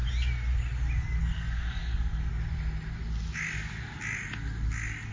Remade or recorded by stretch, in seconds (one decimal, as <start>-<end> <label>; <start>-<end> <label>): 0.0-1.2 recorded; 1.2-2.3 remade; 2.3-5.1 recorded